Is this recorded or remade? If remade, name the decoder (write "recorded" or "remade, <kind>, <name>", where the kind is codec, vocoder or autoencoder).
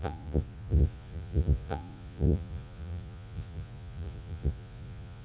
remade, vocoder, Vocos